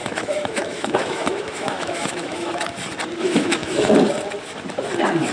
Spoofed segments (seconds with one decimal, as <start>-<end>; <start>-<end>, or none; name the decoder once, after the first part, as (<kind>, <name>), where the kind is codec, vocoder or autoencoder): 0.0-2.6 (autoencoder, DAC-VAE); 3.2-3.9